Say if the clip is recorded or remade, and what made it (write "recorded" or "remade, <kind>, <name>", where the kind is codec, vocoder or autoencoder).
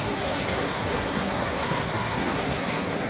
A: remade, codec, SNAC